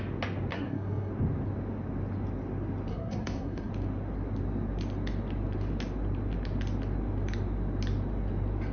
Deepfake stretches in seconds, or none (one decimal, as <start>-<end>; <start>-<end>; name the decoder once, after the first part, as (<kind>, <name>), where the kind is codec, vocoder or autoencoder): 0.5-1.1 (codec, SNAC); 2.9-3.7